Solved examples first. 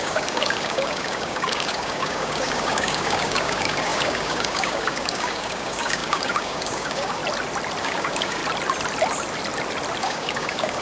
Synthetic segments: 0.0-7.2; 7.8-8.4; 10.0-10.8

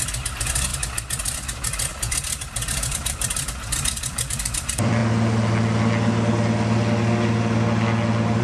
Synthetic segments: 0.0-0.7; 1.9-5.0

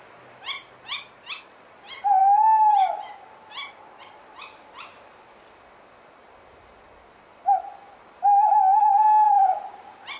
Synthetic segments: none

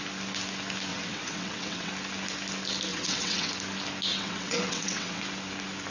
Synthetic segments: 0.9-1.9; 2.9-3.5; 4.1-5.2

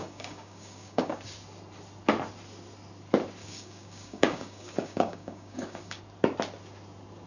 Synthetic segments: 0.0-1.2; 3.4-6.0